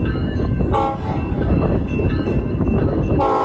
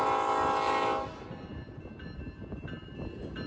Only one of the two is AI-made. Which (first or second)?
first